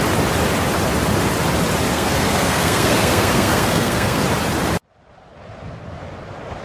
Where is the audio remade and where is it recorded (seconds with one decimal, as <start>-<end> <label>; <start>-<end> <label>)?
0.0-1.9 recorded; 1.9-4.2 remade; 4.2-6.6 recorded